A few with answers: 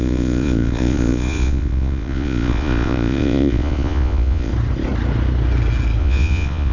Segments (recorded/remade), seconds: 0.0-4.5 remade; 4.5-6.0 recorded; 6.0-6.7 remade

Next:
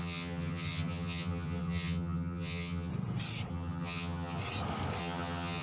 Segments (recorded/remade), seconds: 0.0-2.9 remade; 2.9-3.5 recorded; 3.5-4.4 remade; 4.4-5.0 recorded; 5.0-5.6 remade

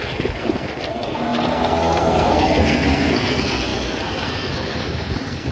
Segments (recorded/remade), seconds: 0.0-5.5 remade

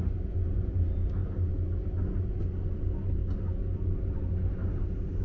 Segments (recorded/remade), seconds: 0.0-5.2 recorded

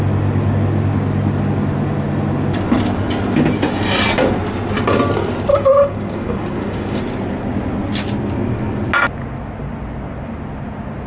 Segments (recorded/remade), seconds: 0.0-5.5 recorded; 5.5-7.0 remade; 7.0-11.1 recorded

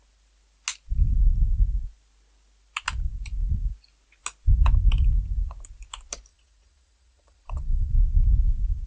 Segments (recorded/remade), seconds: 0.0-6.3 recorded; 6.3-7.9 remade; 7.9-8.9 recorded